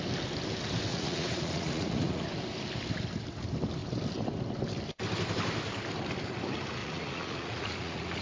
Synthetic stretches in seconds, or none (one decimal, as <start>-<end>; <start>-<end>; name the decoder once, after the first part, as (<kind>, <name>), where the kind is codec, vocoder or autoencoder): 0.9-2.3 (vocoder, Vocos); 6.8-8.2